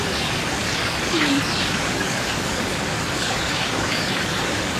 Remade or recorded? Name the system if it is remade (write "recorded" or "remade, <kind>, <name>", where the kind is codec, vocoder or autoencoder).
remade, codec, DAC